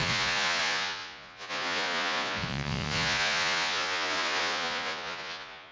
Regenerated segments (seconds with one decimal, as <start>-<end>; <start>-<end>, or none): 0.0-5.7